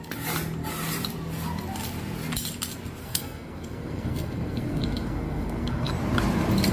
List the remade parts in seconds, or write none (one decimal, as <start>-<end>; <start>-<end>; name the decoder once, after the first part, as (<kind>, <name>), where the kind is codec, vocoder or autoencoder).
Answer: 3.0-5.9 (codec, SNAC)